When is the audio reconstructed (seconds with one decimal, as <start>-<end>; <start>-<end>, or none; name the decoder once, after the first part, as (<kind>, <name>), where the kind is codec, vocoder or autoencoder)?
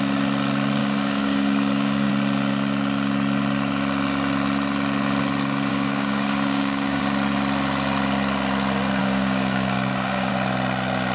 0.8-2.1 (codec, DAC); 5.7-7.0; 9.0-10.3